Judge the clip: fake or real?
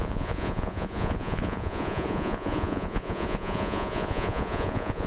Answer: fake